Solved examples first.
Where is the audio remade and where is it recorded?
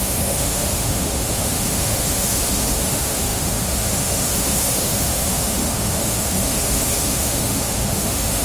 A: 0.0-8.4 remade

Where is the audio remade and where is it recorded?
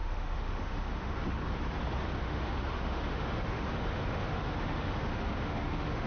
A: 0.0-1.4 remade; 1.4-2.2 recorded; 2.2-6.1 remade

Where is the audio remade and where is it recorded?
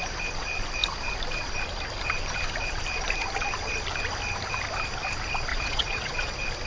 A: 0.0-5.5 recorded; 5.5-6.3 remade; 6.3-6.7 recorded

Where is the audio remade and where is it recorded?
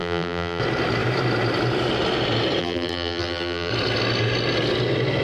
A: 0.0-0.6 remade; 0.6-2.6 recorded; 2.6-3.7 remade; 3.7-5.2 recorded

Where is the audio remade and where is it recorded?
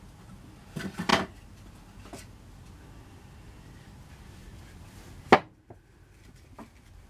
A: 0.0-7.1 recorded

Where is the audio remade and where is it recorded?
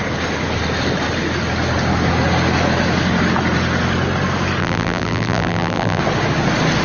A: 0.0-4.6 recorded; 4.6-6.0 remade; 6.0-6.8 recorded